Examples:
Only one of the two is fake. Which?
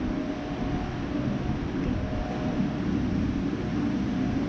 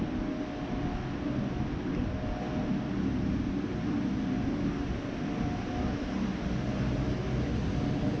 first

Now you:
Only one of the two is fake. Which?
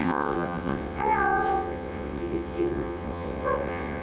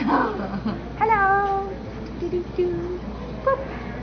first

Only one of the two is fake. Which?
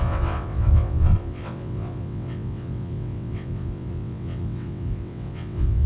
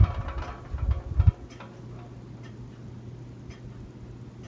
first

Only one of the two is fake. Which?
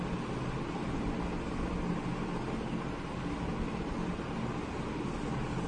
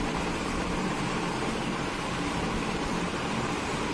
second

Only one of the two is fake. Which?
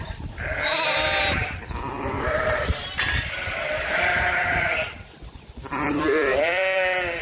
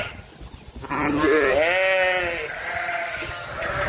first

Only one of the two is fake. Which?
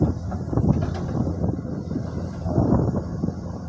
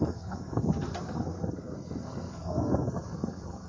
second